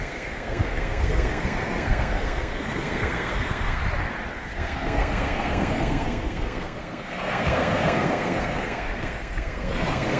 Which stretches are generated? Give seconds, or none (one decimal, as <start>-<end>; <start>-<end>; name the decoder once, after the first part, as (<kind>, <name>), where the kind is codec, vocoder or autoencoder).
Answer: 0.0-3.8 (codec, SNAC); 4.4-10.2